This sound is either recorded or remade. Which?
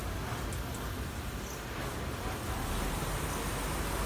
recorded